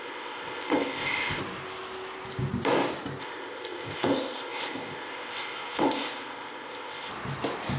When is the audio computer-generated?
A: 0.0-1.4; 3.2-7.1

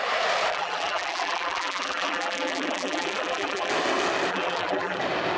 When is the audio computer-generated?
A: 0.5-3.7; 4.3-5.0

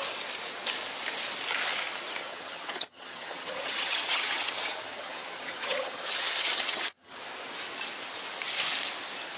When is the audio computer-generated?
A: 2.2-7.2

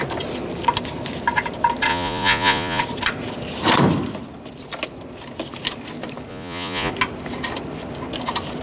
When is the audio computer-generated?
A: 1.9-2.8; 6.3-6.9